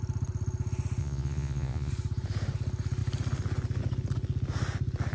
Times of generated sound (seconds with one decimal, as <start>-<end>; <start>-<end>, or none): 1.0-1.9